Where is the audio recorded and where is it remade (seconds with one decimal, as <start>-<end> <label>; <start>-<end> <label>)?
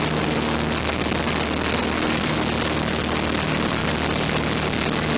0.0-5.2 recorded